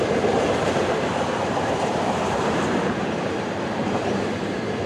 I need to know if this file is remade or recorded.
remade